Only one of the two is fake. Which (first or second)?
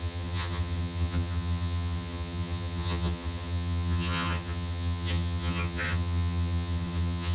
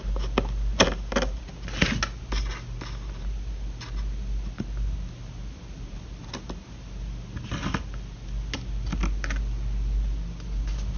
first